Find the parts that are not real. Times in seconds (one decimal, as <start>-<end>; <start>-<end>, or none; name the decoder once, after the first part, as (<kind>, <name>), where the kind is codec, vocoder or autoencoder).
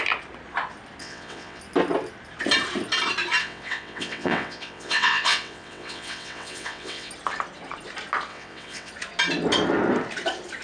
1.0-1.6 (vocoder, WaveNeXt); 3.4-7.1; 8.3-8.9